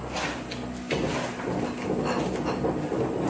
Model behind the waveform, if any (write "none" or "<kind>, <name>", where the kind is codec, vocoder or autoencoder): none